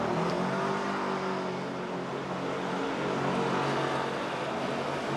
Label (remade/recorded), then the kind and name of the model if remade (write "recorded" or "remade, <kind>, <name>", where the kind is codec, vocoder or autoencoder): recorded